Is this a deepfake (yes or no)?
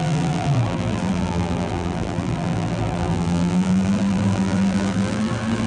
yes